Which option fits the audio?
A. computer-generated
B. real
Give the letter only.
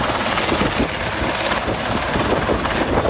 B